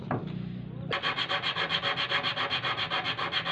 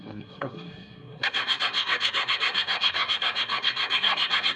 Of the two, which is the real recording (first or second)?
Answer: first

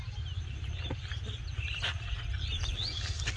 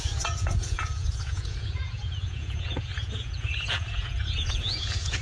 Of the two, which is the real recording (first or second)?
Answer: first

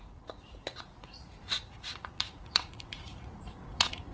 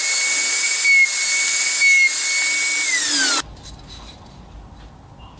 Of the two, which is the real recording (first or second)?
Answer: second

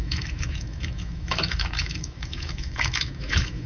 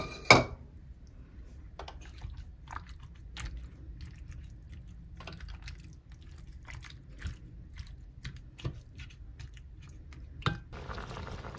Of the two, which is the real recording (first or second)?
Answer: second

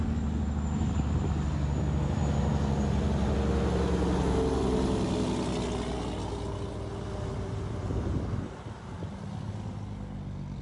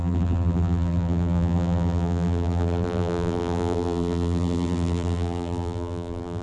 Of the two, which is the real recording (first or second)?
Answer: first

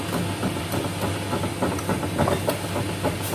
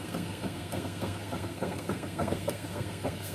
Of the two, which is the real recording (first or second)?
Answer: first